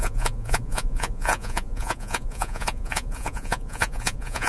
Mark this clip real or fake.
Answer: fake